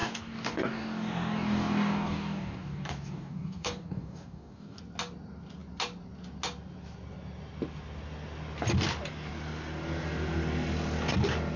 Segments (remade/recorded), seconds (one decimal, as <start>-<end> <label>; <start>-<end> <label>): 0.0-4.8 remade; 4.8-11.6 recorded